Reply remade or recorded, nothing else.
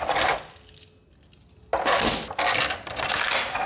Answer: recorded